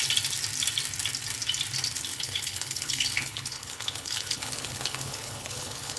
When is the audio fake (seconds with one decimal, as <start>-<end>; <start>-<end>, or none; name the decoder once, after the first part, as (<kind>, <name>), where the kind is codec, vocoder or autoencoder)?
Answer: 2.1-6.0 (codec, HILCodec)